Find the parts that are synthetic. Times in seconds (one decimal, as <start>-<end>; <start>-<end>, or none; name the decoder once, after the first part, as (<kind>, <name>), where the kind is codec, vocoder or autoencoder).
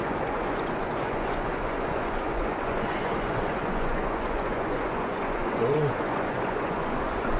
0.0-7.4 (vocoder, Vocos)